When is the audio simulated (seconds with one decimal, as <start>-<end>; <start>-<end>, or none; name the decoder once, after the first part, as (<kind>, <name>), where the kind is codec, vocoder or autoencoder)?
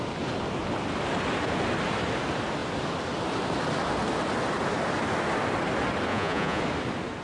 6.1-6.6 (vocoder, Vocos)